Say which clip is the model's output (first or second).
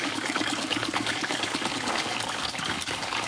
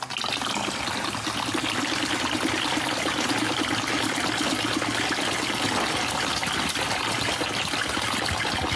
first